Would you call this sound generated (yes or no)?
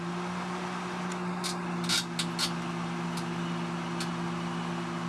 no